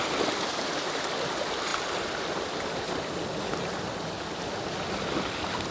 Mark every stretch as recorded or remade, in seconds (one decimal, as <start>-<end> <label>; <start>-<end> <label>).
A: 0.0-5.7 recorded